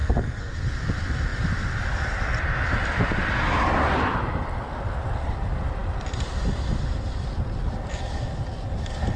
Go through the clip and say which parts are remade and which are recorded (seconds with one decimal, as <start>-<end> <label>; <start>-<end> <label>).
0.0-0.5 remade; 0.5-9.2 recorded